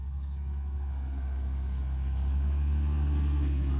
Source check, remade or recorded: remade